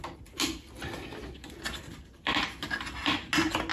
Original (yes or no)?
yes